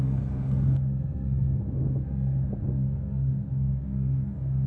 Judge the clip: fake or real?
fake